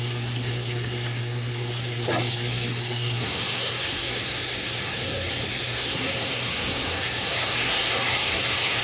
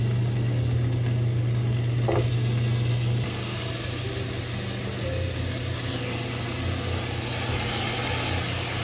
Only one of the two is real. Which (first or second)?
second